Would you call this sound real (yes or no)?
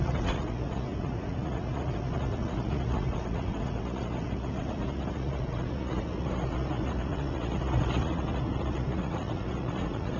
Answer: no